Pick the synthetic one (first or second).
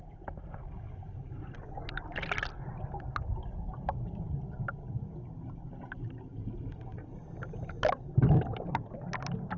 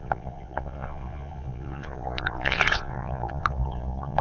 second